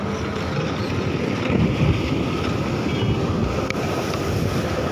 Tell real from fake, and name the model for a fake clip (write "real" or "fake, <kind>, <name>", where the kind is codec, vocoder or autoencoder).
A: real